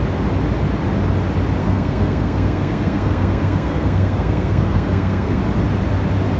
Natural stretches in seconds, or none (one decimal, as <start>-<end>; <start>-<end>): 0.0-1.6; 5.4-6.4